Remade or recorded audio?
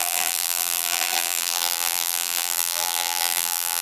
remade